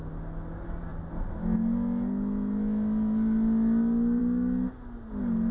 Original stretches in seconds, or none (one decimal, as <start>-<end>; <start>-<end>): 0.0-5.5